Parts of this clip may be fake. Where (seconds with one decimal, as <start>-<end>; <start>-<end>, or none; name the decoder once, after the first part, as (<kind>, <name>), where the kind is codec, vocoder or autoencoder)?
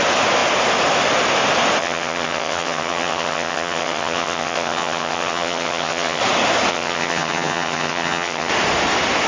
1.8-6.2 (vocoder, HiFi-GAN); 6.7-8.5